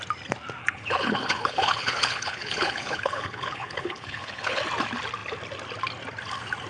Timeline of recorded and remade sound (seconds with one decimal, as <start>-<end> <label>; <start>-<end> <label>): 0.0-0.6 recorded; 0.6-4.6 remade; 4.6-6.7 recorded